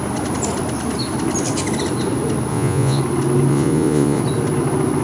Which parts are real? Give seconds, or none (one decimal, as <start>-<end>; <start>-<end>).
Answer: 0.0-2.5; 3.0-3.5; 4.2-5.0